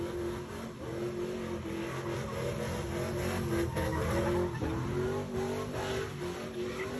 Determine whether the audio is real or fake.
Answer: real